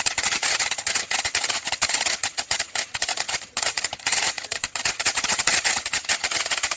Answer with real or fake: fake